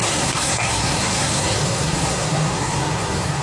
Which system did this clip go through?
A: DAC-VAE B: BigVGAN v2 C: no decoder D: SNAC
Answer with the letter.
D